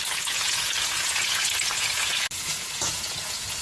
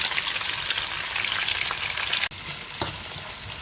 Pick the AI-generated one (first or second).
first